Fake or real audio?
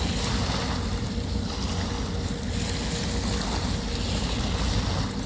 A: real